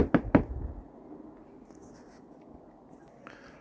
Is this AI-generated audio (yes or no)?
no